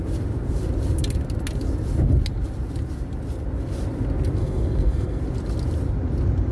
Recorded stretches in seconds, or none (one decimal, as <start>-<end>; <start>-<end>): 0.0-4.4; 5.2-6.5